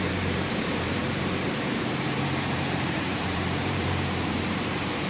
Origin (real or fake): fake